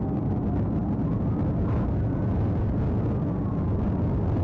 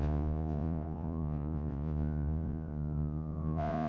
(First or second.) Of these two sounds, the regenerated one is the second